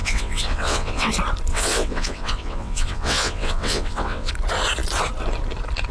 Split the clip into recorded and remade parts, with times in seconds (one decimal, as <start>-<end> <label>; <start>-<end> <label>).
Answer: 0.0-1.1 remade; 1.1-1.5 recorded; 1.5-4.3 remade; 4.3-5.9 recorded

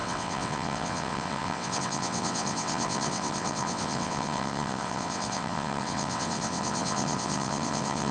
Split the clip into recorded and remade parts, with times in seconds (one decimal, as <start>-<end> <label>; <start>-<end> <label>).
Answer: 0.0-8.1 remade

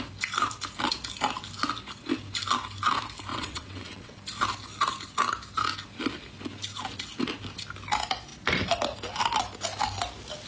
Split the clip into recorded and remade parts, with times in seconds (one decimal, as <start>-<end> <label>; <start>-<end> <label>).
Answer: 0.0-3.3 recorded; 3.3-4.2 remade; 4.2-10.5 recorded

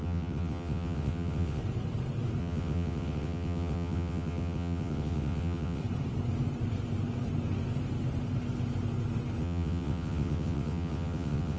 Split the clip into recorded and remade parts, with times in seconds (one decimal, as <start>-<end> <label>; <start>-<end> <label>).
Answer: 0.0-1.6 remade; 1.6-2.4 recorded; 2.4-5.8 remade; 5.8-9.4 recorded; 9.4-11.6 remade